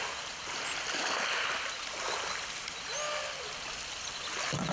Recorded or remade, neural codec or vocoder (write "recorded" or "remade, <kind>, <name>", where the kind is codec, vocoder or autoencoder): recorded